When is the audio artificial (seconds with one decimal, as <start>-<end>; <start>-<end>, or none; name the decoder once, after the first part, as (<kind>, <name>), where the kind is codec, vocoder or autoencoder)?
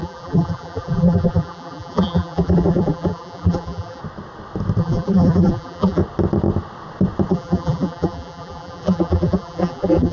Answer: 0.0-4.0 (vocoder, BigVGAN v2); 4.8-6.0; 7.3-10.1